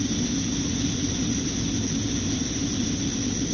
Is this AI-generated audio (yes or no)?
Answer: no